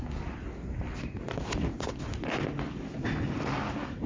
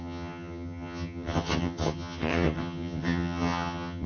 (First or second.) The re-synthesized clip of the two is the second